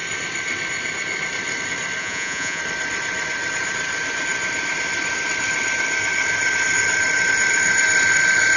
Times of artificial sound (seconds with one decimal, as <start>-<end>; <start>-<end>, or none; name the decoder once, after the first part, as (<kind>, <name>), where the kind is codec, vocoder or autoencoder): 2.0-2.6 (vocoder, Vocos)